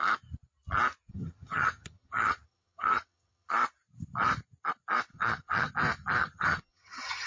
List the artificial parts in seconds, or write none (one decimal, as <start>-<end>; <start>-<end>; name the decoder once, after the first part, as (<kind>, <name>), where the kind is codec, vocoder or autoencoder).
1.1-3.5 (vocoder, HiFi-GAN); 5.1-5.7; 6.2-7.3